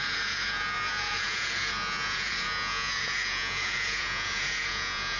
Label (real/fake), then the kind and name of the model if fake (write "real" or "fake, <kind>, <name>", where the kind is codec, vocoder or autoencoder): fake, vocoder, Vocos